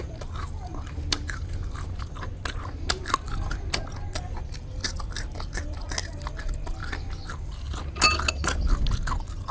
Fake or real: real